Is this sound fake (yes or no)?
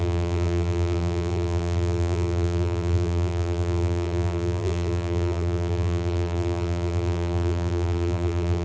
yes